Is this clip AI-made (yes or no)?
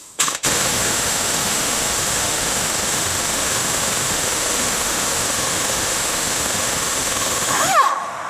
yes